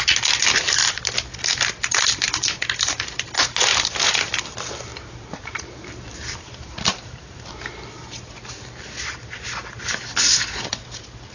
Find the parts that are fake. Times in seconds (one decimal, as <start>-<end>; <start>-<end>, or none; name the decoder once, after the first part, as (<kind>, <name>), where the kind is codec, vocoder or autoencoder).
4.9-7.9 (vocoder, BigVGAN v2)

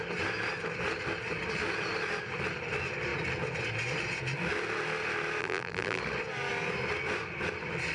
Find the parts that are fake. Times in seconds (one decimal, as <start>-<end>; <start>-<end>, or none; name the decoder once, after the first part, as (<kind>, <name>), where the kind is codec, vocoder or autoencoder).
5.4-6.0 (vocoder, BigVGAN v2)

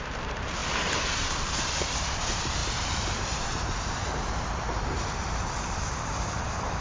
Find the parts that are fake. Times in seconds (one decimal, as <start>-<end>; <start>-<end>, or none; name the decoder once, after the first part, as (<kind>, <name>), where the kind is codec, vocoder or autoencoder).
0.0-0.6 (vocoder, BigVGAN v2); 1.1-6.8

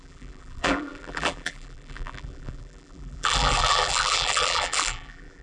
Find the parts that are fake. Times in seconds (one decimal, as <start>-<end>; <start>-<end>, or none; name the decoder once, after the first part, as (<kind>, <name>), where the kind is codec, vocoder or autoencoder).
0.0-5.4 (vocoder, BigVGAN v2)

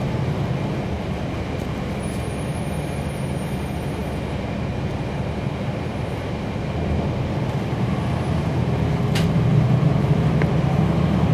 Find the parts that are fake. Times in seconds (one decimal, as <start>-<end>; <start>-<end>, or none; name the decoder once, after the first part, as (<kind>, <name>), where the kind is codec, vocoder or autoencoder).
9.5-10.2 (vocoder, BigVGAN v2)

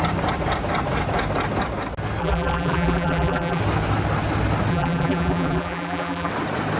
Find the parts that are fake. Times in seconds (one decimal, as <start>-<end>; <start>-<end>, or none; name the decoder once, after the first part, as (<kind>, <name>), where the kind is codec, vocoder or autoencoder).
2.2-3.6 (vocoder, BigVGAN v2); 4.7-6.3